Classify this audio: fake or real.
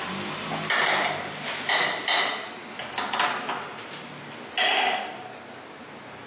real